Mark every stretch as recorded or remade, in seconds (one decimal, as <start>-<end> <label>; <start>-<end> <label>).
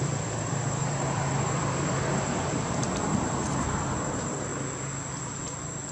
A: 0.0-4.5 remade; 4.5-5.9 recorded